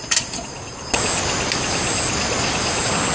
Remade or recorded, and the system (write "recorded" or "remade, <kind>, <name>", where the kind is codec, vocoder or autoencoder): recorded